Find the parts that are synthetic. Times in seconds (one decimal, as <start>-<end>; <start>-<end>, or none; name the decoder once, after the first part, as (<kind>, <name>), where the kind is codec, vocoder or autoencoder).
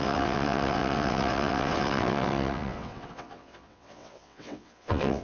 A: 0.0-5.2 (vocoder, WaveNeXt)